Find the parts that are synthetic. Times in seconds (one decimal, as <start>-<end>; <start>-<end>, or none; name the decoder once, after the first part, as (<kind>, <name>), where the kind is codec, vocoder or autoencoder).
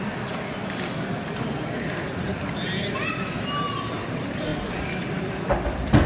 none